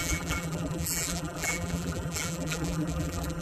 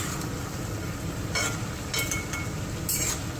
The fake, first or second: first